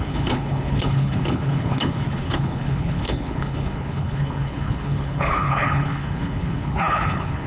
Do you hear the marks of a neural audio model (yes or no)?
yes